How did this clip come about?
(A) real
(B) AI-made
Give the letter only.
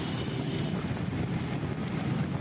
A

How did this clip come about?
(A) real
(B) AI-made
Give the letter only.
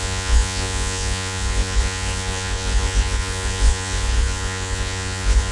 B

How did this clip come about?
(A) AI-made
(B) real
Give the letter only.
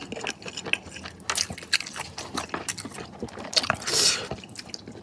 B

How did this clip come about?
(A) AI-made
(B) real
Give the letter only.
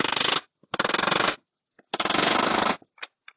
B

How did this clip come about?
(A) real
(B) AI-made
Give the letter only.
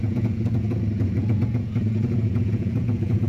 B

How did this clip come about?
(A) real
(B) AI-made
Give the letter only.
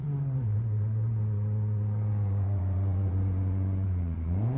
B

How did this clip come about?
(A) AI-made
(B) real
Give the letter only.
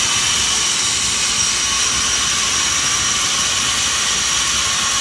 B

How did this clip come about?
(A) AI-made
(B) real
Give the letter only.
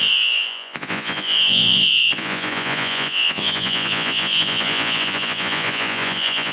A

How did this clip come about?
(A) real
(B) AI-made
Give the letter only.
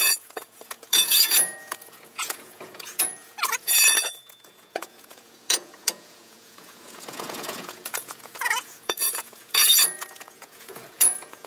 B